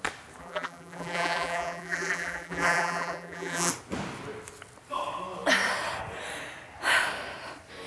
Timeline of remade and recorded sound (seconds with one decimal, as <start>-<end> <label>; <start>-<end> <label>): 0.0-0.4 recorded; 0.4-3.7 remade; 3.7-7.9 recorded